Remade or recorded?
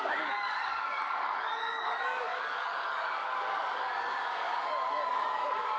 remade